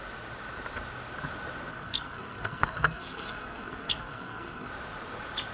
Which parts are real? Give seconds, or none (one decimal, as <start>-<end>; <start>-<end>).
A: 0.0-1.7; 4.7-5.5